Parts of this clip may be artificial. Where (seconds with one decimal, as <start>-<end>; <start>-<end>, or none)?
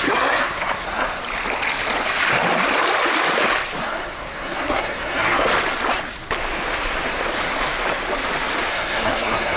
0.0-1.2; 3.8-5.5; 8.7-9.6